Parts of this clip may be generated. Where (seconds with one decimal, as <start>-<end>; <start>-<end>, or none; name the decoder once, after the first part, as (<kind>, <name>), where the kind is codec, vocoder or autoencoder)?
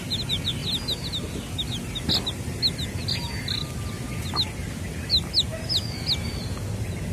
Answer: none